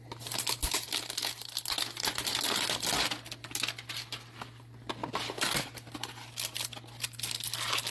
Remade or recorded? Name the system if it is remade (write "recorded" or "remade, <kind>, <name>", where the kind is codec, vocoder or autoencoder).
recorded